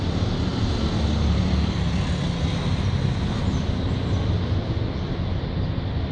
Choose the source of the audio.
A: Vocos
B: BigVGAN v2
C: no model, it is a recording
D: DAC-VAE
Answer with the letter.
C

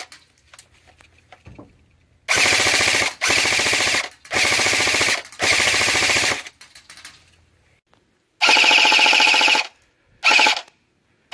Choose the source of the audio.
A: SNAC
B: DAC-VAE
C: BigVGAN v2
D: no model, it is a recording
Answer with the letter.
D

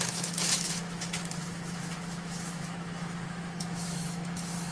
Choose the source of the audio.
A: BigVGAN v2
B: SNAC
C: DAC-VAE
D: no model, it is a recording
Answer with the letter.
C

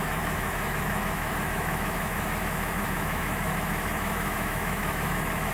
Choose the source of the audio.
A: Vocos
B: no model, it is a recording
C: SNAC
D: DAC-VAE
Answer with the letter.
D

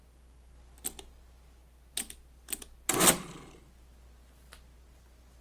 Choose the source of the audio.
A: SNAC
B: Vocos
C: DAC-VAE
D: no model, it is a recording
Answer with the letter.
D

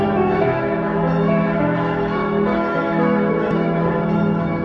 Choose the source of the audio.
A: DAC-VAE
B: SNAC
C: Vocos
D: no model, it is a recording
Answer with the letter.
A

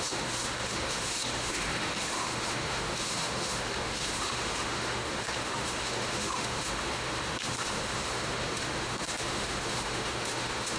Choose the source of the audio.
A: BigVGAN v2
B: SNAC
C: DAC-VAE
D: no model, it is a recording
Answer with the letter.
C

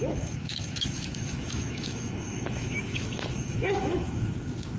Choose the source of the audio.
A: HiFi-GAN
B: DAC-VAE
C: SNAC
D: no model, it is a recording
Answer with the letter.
B